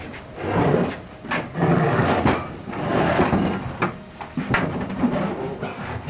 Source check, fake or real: real